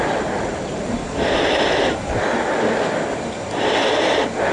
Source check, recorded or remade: recorded